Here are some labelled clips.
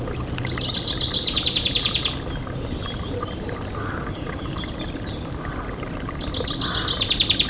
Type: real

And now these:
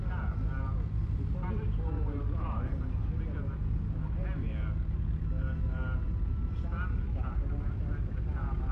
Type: real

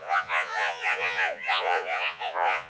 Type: fake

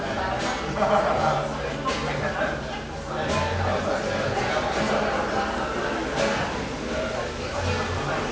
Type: real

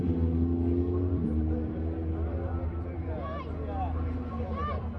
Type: real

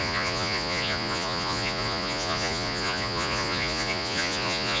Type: fake